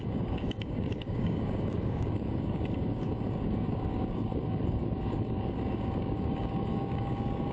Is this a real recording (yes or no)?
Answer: no